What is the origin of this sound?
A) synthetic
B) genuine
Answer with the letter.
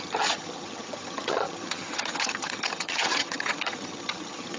A